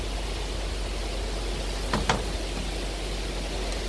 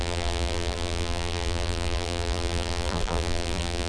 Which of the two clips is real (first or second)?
first